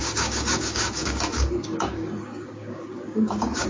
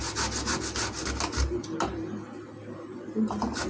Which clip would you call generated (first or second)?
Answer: first